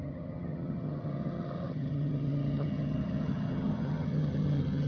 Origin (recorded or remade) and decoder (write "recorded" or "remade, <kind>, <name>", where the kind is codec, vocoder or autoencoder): remade, vocoder, HiFi-GAN